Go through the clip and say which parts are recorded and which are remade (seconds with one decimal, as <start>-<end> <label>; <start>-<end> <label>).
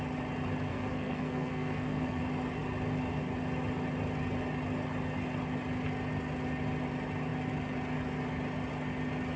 0.0-0.7 recorded; 0.7-2.2 remade; 2.2-9.4 recorded